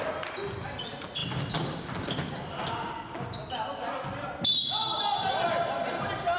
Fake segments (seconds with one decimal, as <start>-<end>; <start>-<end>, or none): none